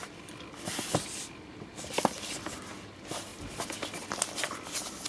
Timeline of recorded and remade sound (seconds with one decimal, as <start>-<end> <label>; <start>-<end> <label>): 0.0-1.1 remade; 1.1-3.3 recorded; 3.3-4.5 remade; 4.5-5.1 recorded